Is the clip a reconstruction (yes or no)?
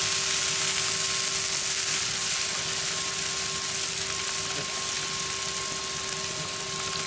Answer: no